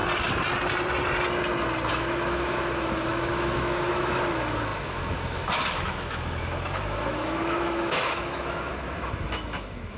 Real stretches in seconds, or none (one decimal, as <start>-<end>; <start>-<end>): 0.0-1.9